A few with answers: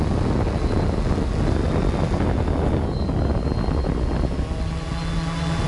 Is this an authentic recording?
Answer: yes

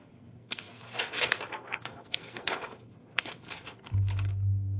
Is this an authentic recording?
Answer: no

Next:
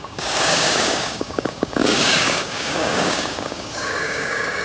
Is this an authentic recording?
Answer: no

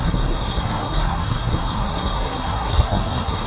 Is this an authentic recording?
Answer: no